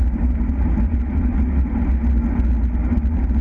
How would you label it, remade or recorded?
recorded